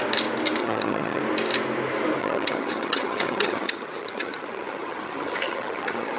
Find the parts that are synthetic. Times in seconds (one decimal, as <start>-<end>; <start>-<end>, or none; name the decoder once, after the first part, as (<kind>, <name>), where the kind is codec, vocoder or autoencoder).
0.6-1.2 (vocoder, HiFi-GAN); 2.2-6.2